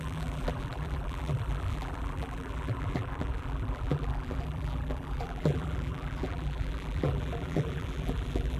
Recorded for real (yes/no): no